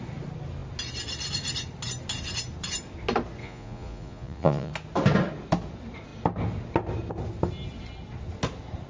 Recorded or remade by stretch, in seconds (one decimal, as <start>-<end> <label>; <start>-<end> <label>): 0.0-3.4 recorded; 3.4-4.7 remade; 4.7-8.9 recorded